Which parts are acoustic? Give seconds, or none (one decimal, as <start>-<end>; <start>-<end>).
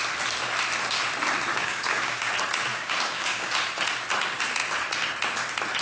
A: 0.0-1.5; 2.3-2.7; 3.5-5.8